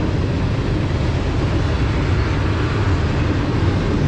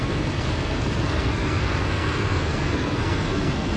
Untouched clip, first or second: first